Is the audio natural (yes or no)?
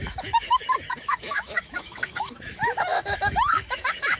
no